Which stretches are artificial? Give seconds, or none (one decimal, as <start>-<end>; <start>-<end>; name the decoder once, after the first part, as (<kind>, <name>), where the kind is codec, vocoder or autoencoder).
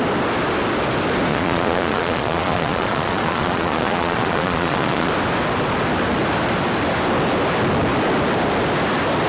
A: 1.3-5.1 (vocoder, Vocos)